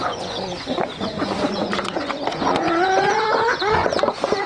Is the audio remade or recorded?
remade